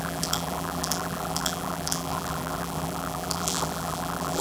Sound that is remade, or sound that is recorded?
remade